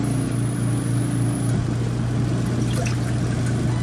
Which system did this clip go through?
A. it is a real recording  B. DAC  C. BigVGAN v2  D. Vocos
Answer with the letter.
A